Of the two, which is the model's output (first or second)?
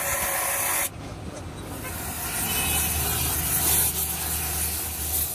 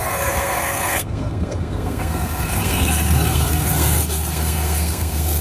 second